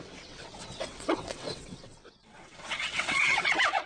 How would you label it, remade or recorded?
remade